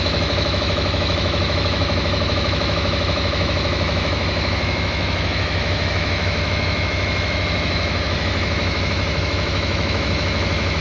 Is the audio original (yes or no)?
no